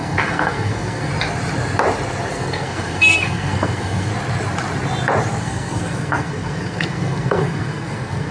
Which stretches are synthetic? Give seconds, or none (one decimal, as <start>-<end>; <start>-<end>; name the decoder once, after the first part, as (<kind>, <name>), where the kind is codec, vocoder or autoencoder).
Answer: 0.0-1.1 (codec, SNAC); 2.3-4.1; 5.4-8.3